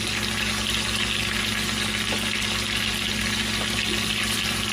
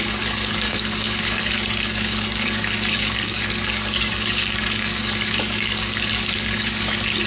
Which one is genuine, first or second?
first